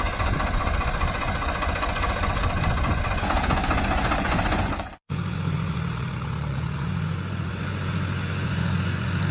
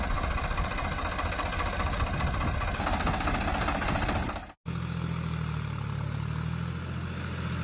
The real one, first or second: second